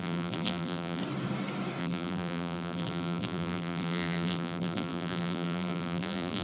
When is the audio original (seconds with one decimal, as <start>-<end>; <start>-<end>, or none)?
1.0-1.8